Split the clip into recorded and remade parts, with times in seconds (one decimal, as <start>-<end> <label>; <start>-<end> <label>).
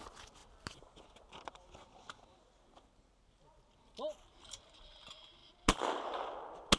0.0-6.8 recorded